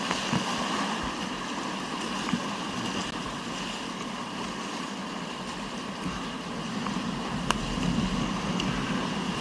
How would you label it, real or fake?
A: real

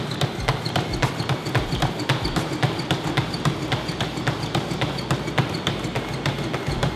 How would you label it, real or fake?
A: real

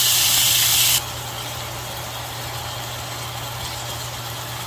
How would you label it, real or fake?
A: real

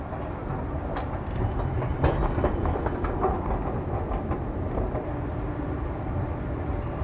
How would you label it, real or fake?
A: real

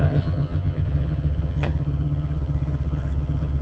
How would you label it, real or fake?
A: fake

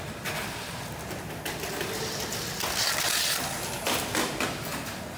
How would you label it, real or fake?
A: real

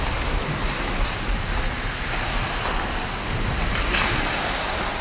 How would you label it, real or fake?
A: real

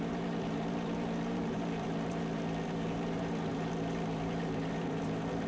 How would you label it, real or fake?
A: fake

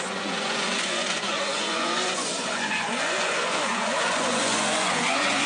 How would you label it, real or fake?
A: fake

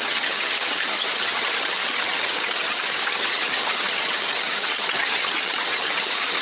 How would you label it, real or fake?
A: fake